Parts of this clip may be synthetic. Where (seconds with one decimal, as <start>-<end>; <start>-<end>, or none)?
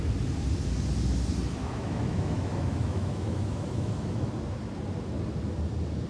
1.6-4.3